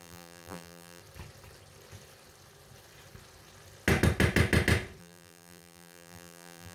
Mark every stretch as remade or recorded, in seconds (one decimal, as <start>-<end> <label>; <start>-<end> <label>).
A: 0.0-1.0 remade; 1.0-5.0 recorded; 5.0-6.7 remade